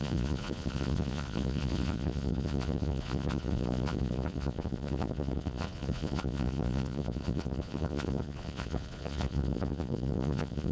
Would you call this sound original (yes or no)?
no